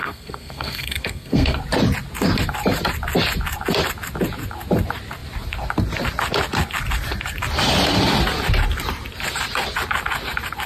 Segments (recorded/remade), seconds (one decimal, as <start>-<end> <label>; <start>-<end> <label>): 0.0-1.6 remade; 1.6-10.7 recorded